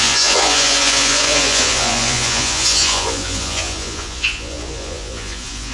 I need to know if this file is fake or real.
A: fake